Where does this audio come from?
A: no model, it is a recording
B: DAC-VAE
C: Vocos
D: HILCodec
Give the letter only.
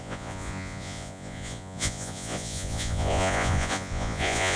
C